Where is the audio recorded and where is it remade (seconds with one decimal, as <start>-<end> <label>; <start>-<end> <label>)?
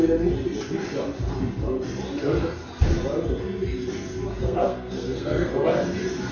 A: 0.0-4.4 recorded; 4.4-5.5 remade; 5.5-6.3 recorded